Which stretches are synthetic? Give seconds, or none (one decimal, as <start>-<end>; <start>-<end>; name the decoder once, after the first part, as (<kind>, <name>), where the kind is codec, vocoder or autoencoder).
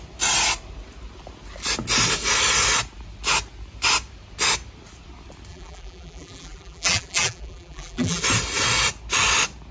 5.5-8.2 (vocoder, BigVGAN v2)